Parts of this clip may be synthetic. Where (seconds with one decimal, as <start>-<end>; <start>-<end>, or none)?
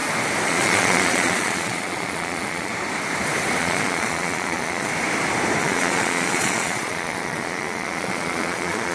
0.5-2.7; 3.6-4.9; 5.6-8.9